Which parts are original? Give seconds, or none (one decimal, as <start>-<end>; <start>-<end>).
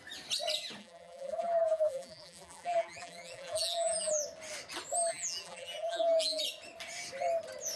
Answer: 0.0-0.8; 4.1-5.1; 6.4-7.8